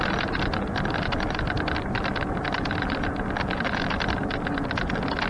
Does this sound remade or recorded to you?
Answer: recorded